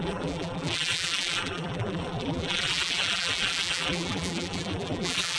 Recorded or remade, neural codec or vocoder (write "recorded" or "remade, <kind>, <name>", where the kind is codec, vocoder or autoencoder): remade, vocoder, BigVGAN v2